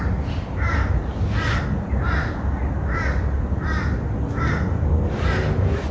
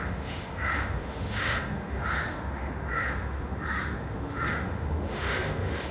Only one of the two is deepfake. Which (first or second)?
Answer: second